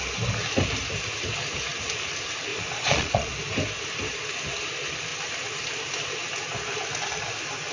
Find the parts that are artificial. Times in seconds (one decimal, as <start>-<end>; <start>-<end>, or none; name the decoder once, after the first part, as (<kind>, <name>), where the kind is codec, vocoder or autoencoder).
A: 2.5-3.3 (vocoder, Vocos)